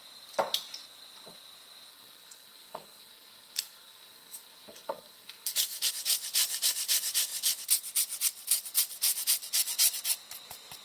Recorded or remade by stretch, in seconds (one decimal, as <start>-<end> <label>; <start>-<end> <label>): 0.0-1.9 recorded; 1.9-5.9 remade; 5.9-10.8 recorded